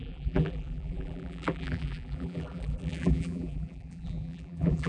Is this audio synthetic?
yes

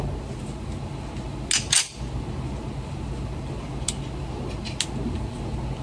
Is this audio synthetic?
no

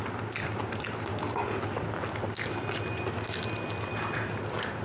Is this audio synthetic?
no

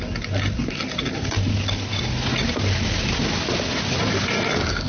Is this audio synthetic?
no